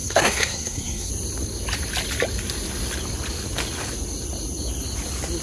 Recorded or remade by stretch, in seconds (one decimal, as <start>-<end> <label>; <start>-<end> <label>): 0.0-1.1 remade; 1.1-5.4 recorded